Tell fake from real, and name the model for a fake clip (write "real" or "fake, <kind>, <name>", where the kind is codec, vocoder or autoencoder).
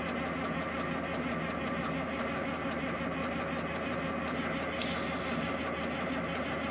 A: real